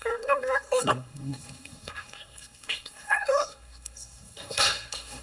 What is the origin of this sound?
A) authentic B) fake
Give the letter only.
B